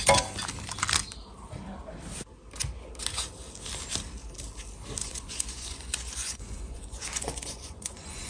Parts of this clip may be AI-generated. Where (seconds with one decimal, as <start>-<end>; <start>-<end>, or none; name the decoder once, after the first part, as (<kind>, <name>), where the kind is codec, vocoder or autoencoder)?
5.0-8.3 (vocoder, Vocos)